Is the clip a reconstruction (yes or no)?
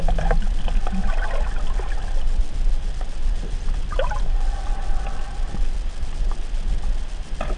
no